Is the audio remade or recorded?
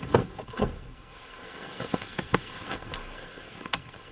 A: remade